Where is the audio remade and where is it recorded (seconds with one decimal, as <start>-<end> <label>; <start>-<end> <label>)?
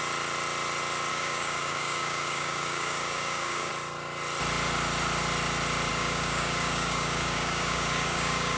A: 0.0-1.1 recorded; 1.1-3.7 remade; 3.7-5.9 recorded; 5.9-8.6 remade